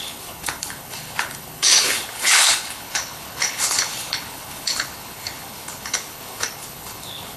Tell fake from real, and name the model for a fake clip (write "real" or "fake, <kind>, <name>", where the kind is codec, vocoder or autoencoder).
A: fake, codec, HILCodec